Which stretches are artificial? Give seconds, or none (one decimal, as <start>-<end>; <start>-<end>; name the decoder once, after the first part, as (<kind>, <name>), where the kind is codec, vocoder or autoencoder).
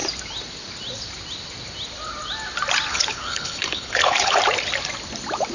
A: 2.9-4.4 (codec, HILCodec)